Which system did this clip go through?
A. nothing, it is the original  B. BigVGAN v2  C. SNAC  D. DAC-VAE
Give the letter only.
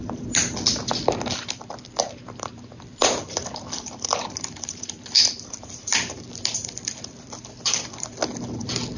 B